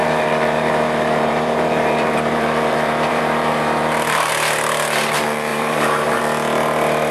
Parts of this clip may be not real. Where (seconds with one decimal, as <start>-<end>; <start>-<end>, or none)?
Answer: 0.0-4.3; 5.5-6.2